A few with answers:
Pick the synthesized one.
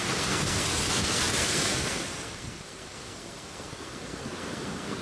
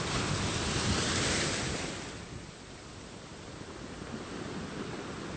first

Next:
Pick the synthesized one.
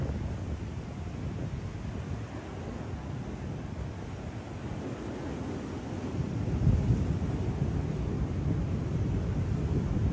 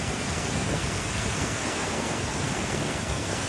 second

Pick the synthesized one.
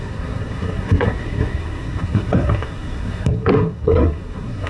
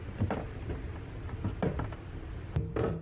first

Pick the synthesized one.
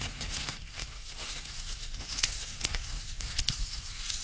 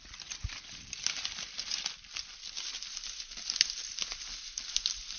first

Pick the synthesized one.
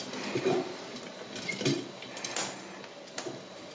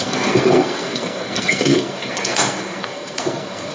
second